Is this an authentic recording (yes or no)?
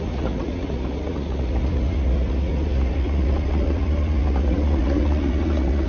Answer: no